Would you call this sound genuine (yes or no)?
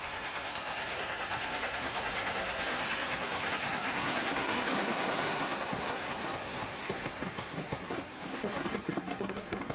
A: no